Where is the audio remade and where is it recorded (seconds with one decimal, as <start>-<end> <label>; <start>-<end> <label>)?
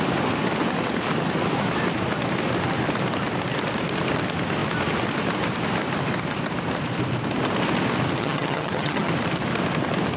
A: 0.0-8.2 recorded; 8.2-9.1 remade; 9.1-10.2 recorded